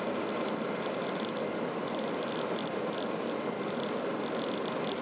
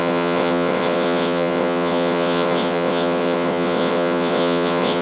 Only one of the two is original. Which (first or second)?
first